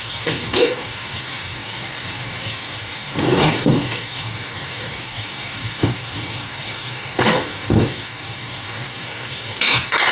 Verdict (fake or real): fake